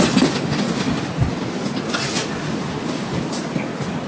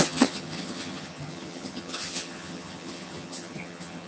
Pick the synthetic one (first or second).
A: second